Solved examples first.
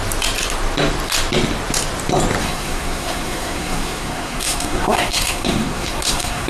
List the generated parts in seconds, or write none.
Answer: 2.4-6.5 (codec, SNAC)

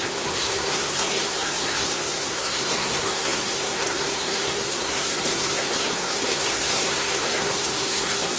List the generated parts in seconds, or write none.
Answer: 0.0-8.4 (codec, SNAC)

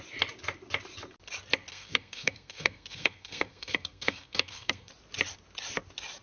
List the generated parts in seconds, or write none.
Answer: 1.7-4.9 (codec, SNAC)